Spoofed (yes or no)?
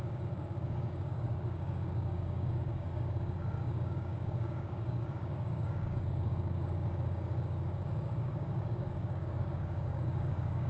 yes